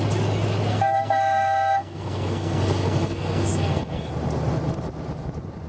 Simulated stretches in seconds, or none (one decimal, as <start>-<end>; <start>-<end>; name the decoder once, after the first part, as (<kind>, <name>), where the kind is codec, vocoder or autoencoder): 0.7-4.1 (codec, SNAC)